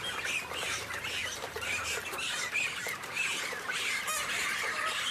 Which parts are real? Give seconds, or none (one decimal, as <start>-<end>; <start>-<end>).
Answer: 0.0-1.2; 1.7-3.2; 4.4-5.1